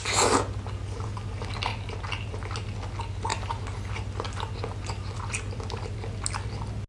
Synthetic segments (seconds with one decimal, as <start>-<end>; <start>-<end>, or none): none